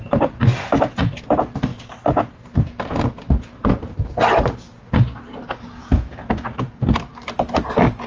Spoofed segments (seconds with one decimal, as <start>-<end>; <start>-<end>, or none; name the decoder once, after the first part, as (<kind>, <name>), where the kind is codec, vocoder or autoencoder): 5.8-6.3 (vocoder, Vocos)